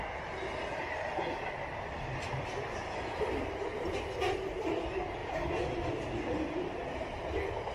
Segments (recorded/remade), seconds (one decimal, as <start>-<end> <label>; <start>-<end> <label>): 0.0-5.2 recorded; 5.2-5.9 remade; 5.9-7.7 recorded